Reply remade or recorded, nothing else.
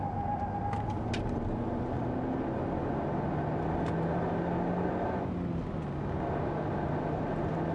recorded